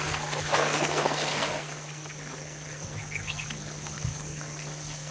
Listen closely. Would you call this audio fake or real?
fake